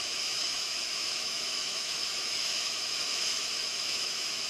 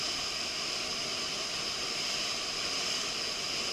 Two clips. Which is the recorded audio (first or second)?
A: second